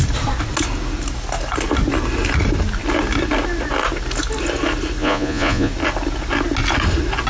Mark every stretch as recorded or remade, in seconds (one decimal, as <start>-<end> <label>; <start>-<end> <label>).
0.0-5.0 recorded; 5.0-5.7 remade; 5.7-7.3 recorded